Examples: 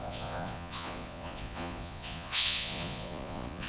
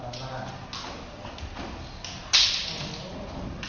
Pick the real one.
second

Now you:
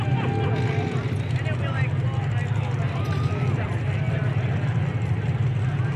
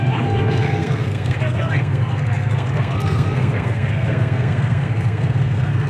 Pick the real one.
first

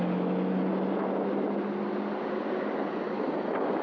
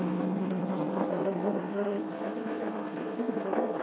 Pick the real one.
first